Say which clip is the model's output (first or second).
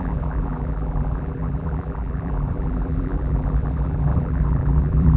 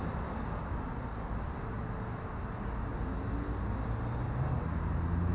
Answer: first